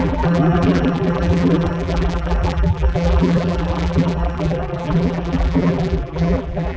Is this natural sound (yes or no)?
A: no